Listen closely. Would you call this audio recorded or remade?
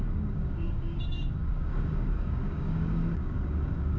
remade